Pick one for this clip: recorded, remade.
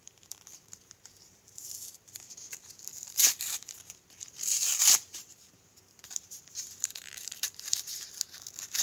remade